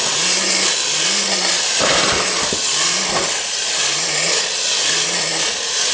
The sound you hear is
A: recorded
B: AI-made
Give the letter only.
A